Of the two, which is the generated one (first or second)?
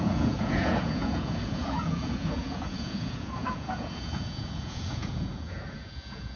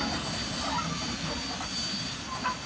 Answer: first